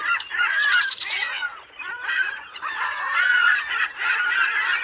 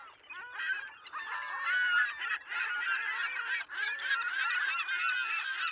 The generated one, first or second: first